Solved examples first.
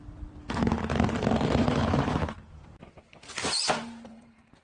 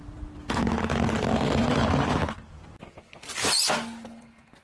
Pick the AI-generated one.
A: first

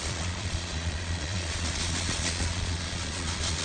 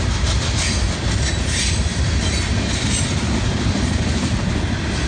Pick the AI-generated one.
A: first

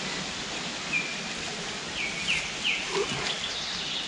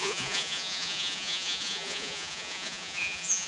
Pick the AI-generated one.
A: second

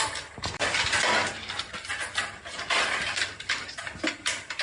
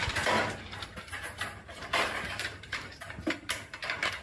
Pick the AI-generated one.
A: second